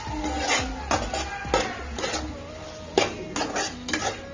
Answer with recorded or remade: recorded